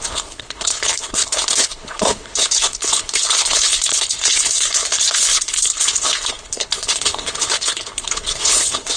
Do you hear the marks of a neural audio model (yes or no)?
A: yes